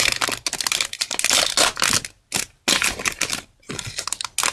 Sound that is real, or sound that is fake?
real